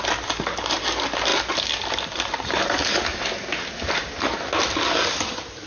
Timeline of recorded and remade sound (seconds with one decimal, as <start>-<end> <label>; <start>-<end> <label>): 0.0-5.7 recorded